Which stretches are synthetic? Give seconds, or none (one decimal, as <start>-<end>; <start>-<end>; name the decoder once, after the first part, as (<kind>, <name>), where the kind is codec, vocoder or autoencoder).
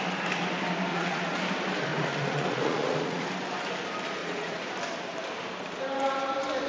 0.9-1.4 (vocoder, Vocos); 1.9-3.3; 4.2-4.7